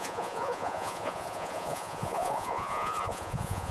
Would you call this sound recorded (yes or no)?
no